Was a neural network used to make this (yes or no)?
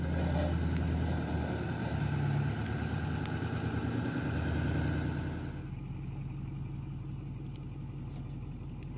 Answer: no